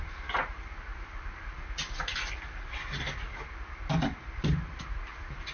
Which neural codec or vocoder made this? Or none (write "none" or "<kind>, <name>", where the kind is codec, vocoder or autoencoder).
none